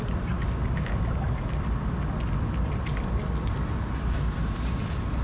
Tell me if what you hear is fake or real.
real